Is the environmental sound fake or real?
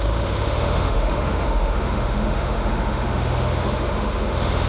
fake